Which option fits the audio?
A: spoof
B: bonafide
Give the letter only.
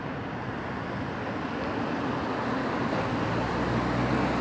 B